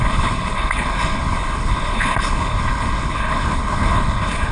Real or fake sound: fake